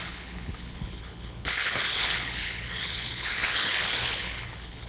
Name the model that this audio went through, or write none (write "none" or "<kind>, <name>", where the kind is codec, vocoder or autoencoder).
codec, HILCodec